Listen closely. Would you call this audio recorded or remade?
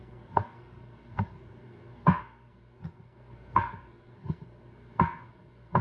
remade